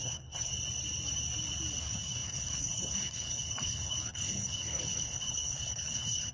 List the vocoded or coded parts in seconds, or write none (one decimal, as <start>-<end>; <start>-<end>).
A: 0.0-0.5; 1.8-6.3